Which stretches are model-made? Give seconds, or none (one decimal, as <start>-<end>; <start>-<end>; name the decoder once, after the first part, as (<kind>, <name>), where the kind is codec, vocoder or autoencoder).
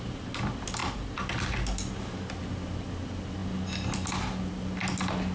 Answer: none